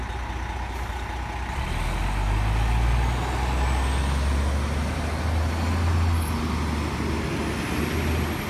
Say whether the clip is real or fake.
real